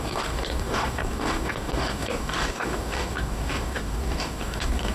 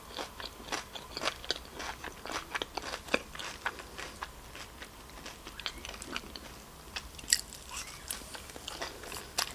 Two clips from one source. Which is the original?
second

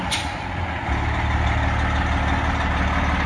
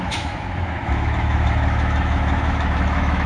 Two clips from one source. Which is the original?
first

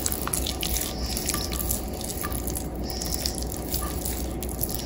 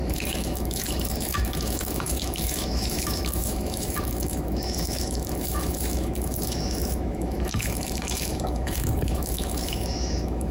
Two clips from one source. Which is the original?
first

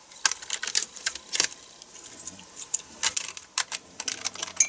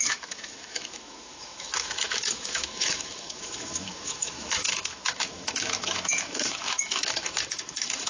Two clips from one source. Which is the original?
first